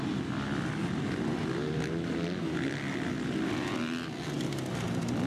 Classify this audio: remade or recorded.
recorded